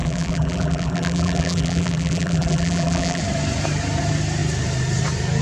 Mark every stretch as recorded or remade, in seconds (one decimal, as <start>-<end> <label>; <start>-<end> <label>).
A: 0.0-3.2 remade; 3.2-5.4 recorded